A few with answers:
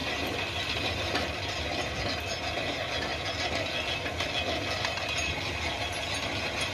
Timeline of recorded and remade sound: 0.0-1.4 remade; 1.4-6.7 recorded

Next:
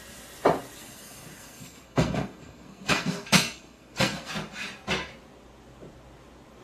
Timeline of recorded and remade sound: 0.0-0.8 recorded; 0.8-4.3 remade; 4.3-6.6 recorded

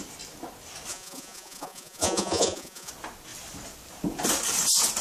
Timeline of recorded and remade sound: 0.0-0.9 recorded; 0.9-2.9 remade; 2.9-5.0 recorded